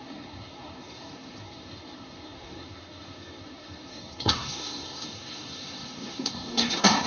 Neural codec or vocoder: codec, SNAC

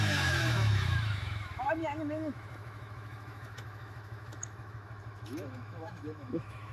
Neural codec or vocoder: autoencoder, DAC-VAE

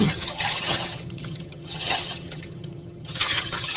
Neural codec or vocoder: vocoder, HiFi-GAN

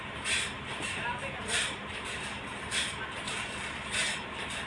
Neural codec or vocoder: none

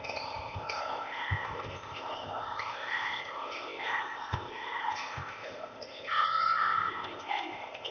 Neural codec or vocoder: codec, ZipCodec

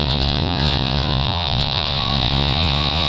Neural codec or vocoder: vocoder, Vocos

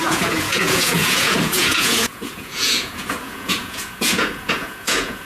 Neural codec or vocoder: vocoder, Vocos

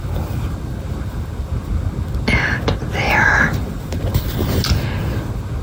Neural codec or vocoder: none